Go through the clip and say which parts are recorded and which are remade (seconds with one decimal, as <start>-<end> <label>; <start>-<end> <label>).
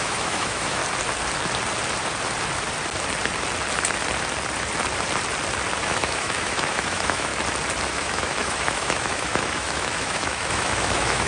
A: 0.0-0.8 remade; 0.8-5.8 recorded; 5.8-7.3 remade; 7.3-7.9 recorded; 7.9-11.3 remade